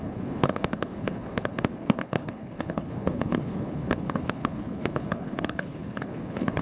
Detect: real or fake fake